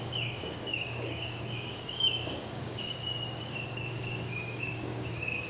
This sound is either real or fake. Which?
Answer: fake